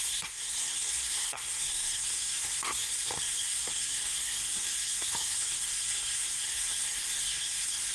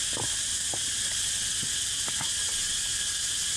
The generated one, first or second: first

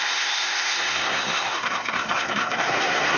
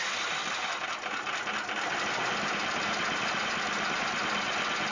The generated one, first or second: first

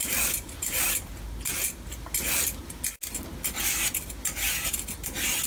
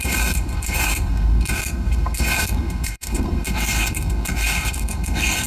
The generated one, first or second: second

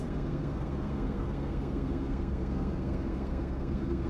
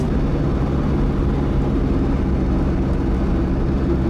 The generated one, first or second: first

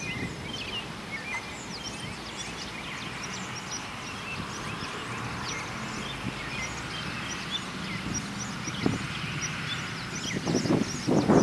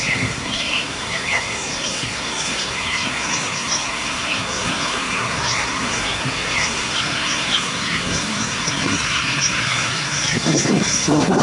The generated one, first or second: second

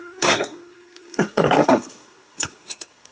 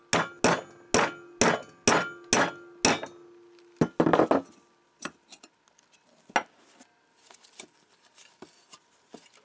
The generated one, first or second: first